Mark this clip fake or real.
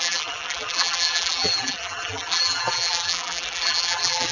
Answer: fake